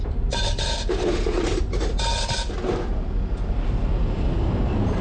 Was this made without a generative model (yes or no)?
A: yes